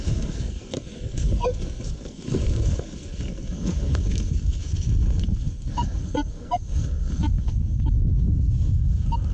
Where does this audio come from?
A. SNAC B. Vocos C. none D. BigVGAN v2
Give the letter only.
A